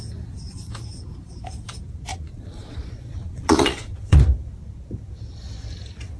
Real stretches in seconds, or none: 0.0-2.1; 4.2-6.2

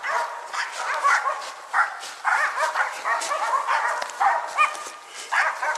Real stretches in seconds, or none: 0.0-5.8

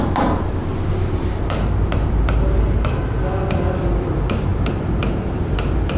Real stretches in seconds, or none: 0.0-6.0

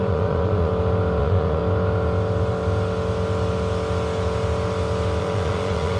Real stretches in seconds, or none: 0.7-1.2; 1.6-5.2

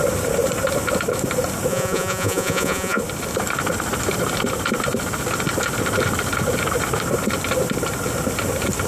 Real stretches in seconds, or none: 0.0-1.7; 3.0-8.9

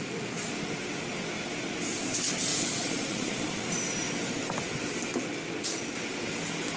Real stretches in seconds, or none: 0.0-2.5; 3.6-6.8

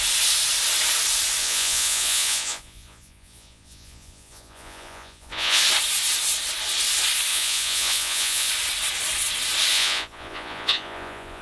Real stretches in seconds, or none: 0.0-1.4; 5.6-7.3; 8.5-9.7

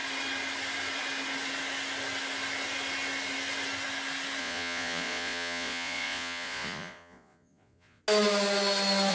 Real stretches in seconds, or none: 0.0-4.4; 8.0-9.1